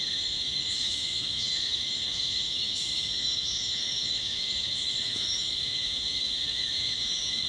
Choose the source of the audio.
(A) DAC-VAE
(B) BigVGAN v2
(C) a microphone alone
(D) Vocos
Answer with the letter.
A